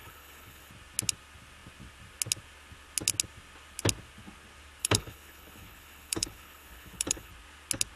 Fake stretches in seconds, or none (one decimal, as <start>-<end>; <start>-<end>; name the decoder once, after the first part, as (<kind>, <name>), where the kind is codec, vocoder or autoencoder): 0.0-0.7 (codec, HILCodec); 4.8-7.3